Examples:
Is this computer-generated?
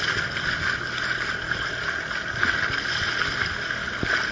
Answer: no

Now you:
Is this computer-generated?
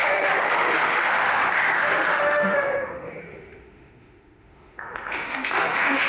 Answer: yes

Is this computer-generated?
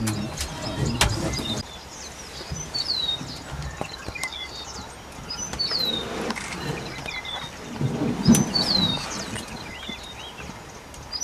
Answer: no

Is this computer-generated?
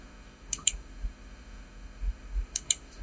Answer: yes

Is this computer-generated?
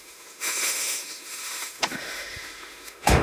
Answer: yes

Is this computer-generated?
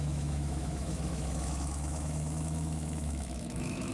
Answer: yes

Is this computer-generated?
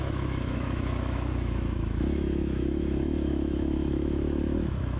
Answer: yes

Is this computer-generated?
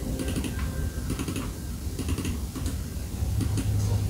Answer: no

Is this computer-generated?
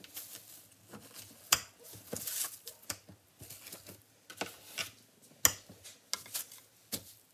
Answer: no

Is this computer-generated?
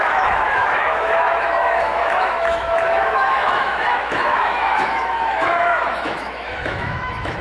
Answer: yes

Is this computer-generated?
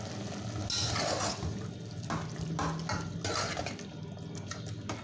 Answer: no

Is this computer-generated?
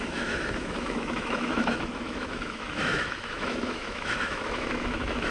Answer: yes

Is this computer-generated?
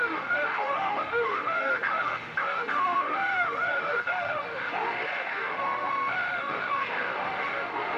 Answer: yes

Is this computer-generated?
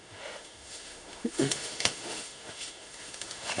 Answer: yes